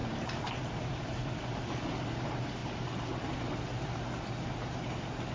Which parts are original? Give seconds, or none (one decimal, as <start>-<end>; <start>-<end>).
0.6-5.3